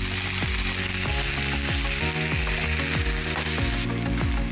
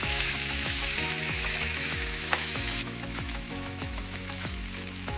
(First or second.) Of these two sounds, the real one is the first